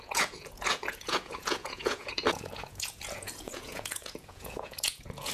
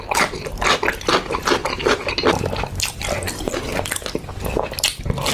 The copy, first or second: first